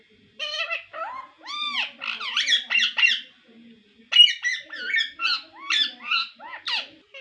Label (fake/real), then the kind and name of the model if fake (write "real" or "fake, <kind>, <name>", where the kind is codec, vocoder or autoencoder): real